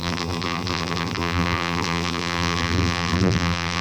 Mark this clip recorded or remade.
remade